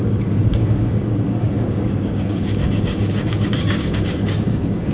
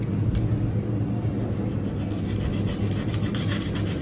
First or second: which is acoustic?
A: second